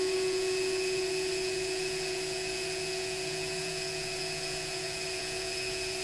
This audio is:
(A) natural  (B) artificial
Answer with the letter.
B